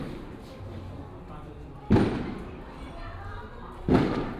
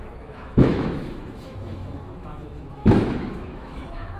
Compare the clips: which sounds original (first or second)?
first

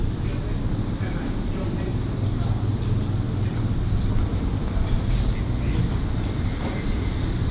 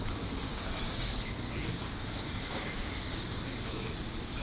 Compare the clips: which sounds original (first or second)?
first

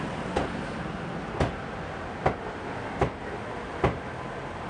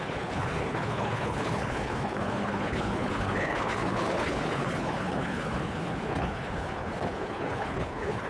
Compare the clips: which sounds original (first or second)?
first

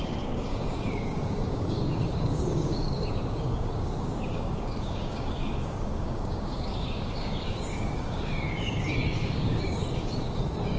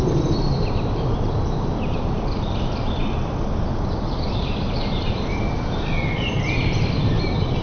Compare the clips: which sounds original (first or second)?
second